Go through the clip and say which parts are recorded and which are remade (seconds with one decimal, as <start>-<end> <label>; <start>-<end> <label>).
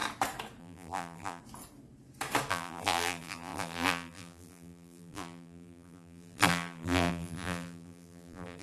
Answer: 0.0-0.6 recorded; 0.6-1.4 remade; 1.4-2.5 recorded; 2.5-8.6 remade